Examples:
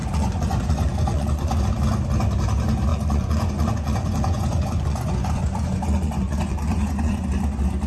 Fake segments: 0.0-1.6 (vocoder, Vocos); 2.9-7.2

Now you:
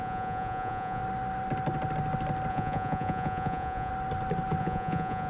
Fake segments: 0.0-1.0 (vocoder, Vocos); 2.5-3.9; 4.6-5.3

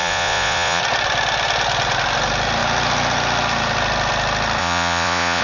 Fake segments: 0.0-0.8 (vocoder, Vocos); 4.6-5.4